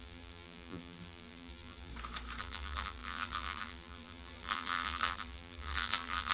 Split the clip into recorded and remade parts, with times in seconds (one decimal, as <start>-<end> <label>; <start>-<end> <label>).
0.0-1.9 remade; 1.9-2.4 recorded; 2.4-6.3 remade